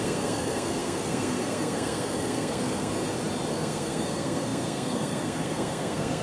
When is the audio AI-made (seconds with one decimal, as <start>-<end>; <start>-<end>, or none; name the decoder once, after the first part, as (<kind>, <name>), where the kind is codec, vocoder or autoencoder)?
0.0-2.9 (codec, SNAC); 3.5-6.2